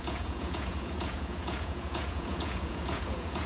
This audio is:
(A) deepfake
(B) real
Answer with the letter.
A